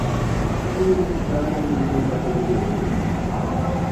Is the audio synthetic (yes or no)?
yes